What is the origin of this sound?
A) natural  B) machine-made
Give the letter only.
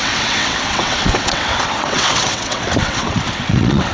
B